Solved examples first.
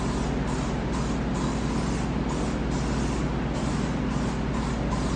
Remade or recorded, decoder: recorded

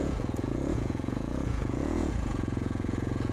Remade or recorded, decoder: remade, vocoder, Vocos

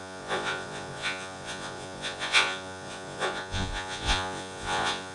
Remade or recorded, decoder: remade, vocoder, Vocos